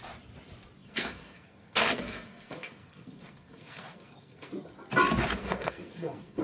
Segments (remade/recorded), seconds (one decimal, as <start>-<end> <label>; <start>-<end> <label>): 0.0-0.8 recorded; 0.8-4.5 remade; 4.5-5.4 recorded; 5.4-6.4 remade